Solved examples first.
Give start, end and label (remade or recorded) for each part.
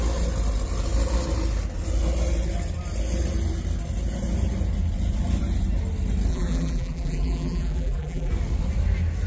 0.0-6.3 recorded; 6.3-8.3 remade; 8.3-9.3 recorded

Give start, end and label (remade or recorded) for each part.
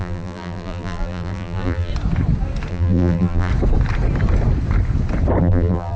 0.0-1.9 remade; 1.9-2.7 recorded; 2.7-3.5 remade; 3.5-5.4 recorded; 5.4-6.0 remade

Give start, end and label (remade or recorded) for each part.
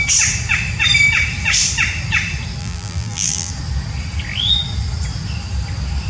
0.0-2.6 recorded; 2.6-3.5 remade; 3.5-6.1 recorded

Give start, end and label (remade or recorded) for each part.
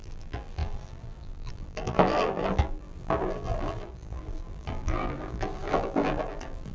0.0-6.7 remade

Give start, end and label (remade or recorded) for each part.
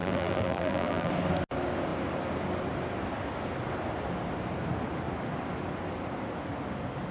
0.0-1.1 remade; 1.1-7.1 recorded